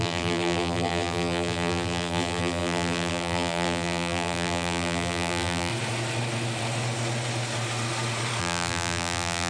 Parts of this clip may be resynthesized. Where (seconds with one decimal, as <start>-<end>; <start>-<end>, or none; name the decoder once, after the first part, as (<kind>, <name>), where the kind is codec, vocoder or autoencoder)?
0.0-5.7 (vocoder, BigVGAN v2); 8.4-9.5